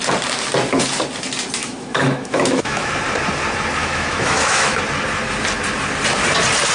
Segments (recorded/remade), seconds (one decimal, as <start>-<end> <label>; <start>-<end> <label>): 0.0-1.6 recorded; 1.6-2.9 remade; 2.9-3.8 recorded; 3.8-4.8 remade; 4.8-6.7 recorded